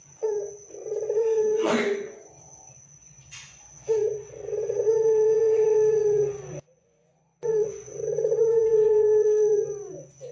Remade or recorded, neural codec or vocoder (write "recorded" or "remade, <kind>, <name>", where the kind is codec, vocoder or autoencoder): remade, vocoder, Vocos